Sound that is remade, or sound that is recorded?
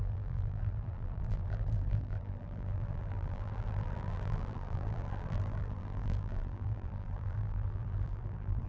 remade